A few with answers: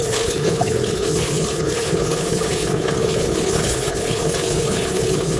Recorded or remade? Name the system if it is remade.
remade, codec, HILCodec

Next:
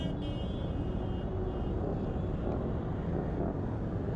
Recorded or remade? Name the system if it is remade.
recorded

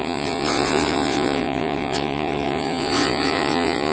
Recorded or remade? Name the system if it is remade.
remade, vocoder, WaveNeXt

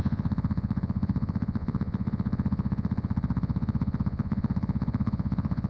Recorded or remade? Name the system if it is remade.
remade, vocoder, Vocos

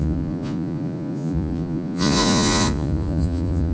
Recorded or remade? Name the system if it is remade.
remade, vocoder, Vocos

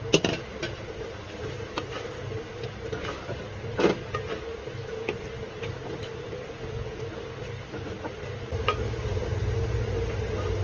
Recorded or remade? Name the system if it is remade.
recorded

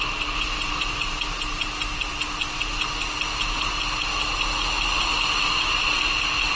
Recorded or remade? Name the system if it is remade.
recorded